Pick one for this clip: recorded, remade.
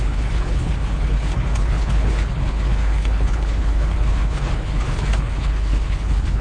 remade